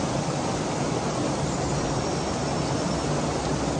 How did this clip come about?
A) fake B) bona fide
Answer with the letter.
B